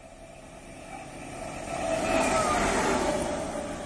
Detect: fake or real real